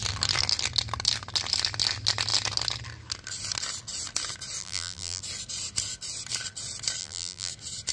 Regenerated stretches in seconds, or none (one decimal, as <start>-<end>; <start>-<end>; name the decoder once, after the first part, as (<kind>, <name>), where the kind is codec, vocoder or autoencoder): 4.6-5.2 (vocoder, BigVGAN v2); 7.0-7.5

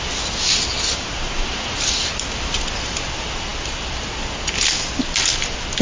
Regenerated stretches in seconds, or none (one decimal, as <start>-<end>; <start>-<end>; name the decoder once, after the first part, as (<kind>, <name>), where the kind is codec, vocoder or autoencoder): 0.7-2.9 (vocoder, BigVGAN v2)

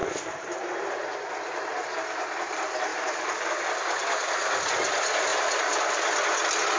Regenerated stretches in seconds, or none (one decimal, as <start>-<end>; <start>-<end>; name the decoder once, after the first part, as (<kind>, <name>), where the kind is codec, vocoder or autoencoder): 0.0-0.7 (vocoder, BigVGAN v2); 2.9-3.6

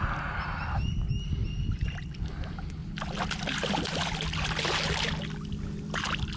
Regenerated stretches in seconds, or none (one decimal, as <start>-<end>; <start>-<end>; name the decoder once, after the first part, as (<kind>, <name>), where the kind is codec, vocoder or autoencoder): 1.4-2.3 (vocoder, BigVGAN v2); 2.8-4.7

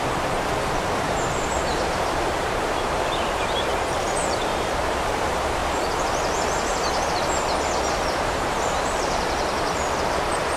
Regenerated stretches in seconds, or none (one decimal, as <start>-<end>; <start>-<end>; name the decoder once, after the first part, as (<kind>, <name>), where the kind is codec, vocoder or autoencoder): 0.0-5.6 (vocoder, BigVGAN v2); 8.2-10.6

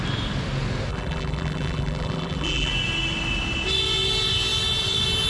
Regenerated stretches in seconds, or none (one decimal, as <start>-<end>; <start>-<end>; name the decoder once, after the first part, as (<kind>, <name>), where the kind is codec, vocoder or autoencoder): 0.9-2.7 (vocoder, BigVGAN v2)